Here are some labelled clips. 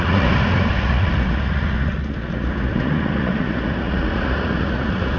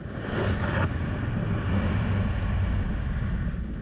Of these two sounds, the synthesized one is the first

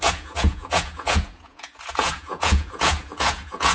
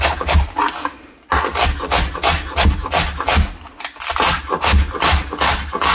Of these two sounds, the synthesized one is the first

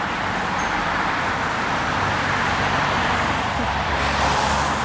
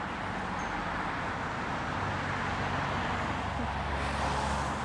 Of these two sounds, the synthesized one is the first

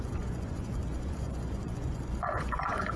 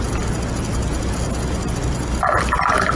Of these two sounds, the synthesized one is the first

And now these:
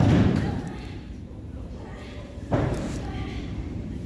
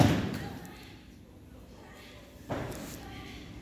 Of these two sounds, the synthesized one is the first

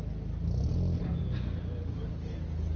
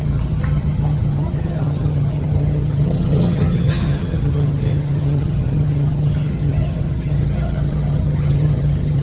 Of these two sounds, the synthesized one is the second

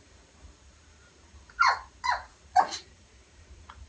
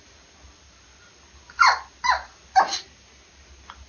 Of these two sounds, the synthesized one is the first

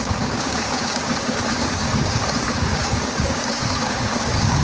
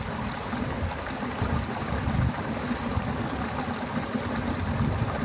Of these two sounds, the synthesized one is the first